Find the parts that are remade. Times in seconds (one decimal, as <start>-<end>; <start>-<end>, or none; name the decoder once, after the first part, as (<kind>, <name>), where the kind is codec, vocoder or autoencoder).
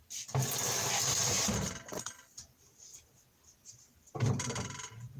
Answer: 0.0-2.9 (vocoder, BigVGAN v2)